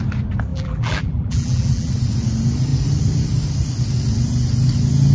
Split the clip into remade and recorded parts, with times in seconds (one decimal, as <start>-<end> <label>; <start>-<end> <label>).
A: 0.0-0.5 recorded; 0.5-1.9 remade; 1.9-5.1 recorded